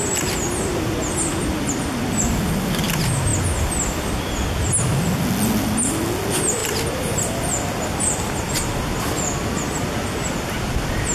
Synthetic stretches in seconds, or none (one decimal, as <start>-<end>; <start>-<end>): none